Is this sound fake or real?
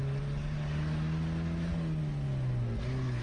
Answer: real